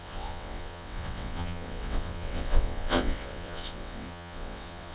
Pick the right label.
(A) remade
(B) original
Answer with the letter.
A